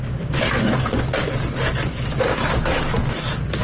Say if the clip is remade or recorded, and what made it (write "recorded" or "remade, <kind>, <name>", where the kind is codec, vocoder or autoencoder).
recorded